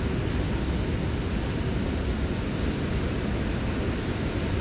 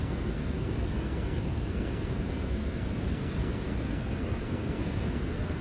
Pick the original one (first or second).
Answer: first